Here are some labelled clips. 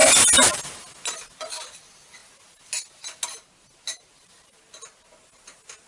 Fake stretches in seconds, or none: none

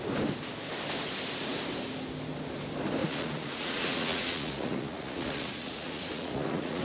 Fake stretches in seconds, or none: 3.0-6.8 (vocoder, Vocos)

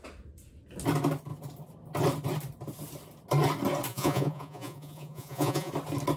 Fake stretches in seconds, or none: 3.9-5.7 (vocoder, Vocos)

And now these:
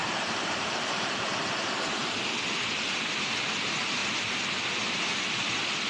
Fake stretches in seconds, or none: 0.0-1.3 (vocoder, BigVGAN v2)

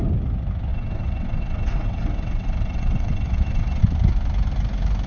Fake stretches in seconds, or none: 0.7-3.8 (vocoder, WaveNeXt)

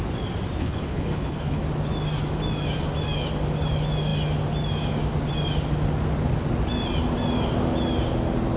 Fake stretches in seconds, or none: 0.6-1.6 (codec, HILCodec)